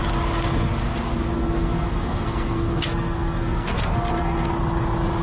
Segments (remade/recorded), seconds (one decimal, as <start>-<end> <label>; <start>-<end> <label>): 0.0-1.4 recorded; 1.4-4.5 remade; 4.5-5.2 recorded